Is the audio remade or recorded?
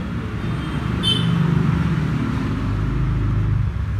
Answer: recorded